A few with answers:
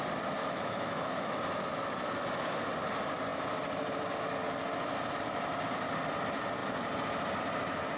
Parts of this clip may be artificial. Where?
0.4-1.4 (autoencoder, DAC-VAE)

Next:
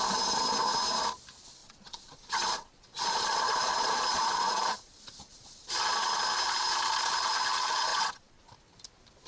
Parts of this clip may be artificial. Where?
1.6-5.7 (vocoder, Vocos); 7.9-8.4

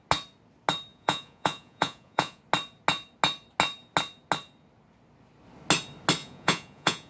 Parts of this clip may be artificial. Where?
0.9-2.4 (vocoder, Vocos); 6.2-7.1

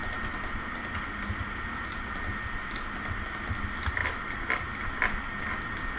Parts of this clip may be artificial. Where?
0.0-3.6 (vocoder, BigVGAN v2); 4.0-5.4

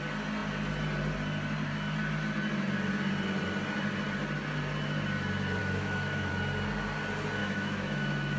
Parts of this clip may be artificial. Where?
5.6-6.3 (autoencoder, DAC-VAE); 7.4-8.4

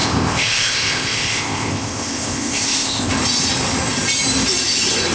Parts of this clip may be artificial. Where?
0.0-3.1 (codec, ZipCodec)

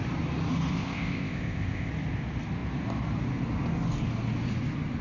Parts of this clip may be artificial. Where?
0.7-1.9 (codec, ZipCodec)